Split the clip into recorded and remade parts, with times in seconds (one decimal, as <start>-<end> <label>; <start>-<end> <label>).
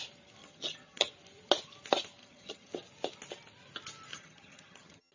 0.0-0.4 recorded; 0.4-1.1 remade; 1.1-2.2 recorded; 2.2-2.7 remade; 2.7-4.1 recorded; 4.1-5.1 remade